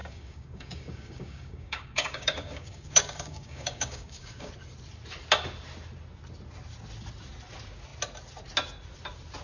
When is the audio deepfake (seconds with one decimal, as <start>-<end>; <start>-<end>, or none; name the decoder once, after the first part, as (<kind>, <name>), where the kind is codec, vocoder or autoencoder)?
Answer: 0.0-4.5 (codec, DAC)